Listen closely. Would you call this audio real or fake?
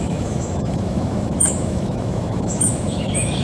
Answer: fake